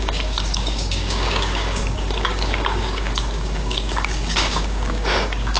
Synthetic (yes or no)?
yes